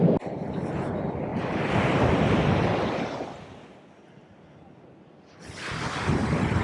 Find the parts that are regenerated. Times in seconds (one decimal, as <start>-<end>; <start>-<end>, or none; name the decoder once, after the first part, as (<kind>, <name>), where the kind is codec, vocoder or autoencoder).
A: none